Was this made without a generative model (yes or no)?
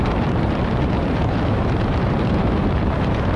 no